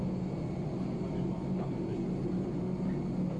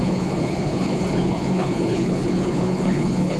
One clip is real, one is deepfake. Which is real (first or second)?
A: first